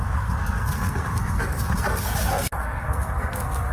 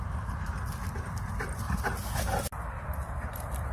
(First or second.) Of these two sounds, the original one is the second